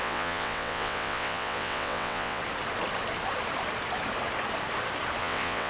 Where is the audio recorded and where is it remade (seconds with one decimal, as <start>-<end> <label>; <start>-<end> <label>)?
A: 0.0-2.4 remade; 2.4-5.2 recorded; 5.2-5.7 remade